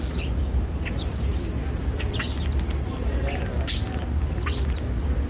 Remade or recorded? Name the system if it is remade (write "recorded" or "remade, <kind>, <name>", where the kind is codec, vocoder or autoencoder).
recorded